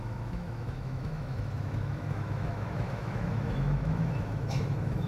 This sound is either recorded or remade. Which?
remade